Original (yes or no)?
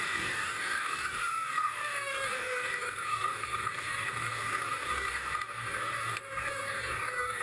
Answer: no